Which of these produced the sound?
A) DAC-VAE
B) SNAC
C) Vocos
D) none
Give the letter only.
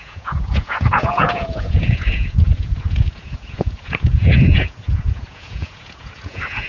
C